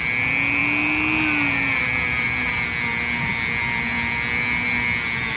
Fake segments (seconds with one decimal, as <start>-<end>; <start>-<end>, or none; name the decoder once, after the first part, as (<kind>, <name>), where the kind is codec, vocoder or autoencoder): none